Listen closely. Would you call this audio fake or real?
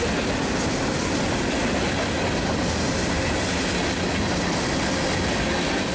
real